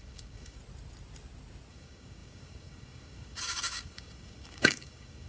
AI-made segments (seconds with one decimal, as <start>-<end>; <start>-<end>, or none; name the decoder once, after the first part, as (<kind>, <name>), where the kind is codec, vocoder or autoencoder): 0.0-0.6 (codec, DAC); 1.7-5.3